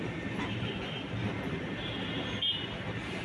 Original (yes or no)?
yes